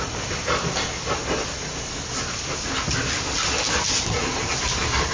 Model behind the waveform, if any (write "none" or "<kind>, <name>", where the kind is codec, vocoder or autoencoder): none